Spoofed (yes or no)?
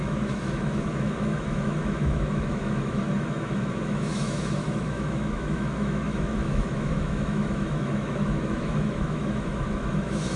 yes